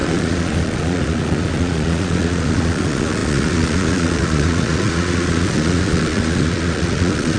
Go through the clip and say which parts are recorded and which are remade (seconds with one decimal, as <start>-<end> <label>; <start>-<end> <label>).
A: 0.0-7.4 remade